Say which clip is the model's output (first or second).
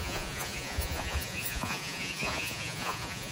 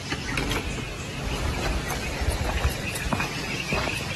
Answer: first